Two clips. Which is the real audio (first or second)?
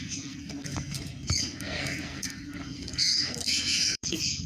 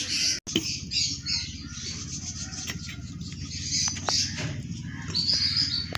second